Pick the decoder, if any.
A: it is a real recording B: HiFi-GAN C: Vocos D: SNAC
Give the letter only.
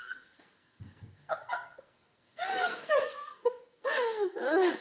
D